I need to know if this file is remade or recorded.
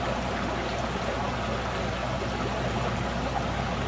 recorded